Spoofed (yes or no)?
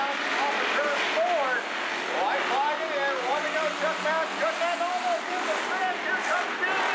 no